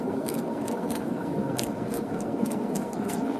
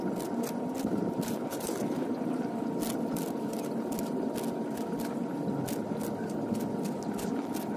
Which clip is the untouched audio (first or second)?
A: second